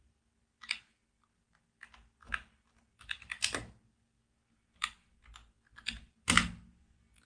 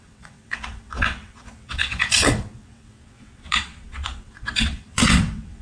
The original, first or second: first